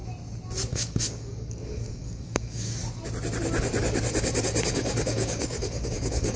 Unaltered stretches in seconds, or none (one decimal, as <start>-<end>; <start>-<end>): 0.0-0.7; 2.8-4.7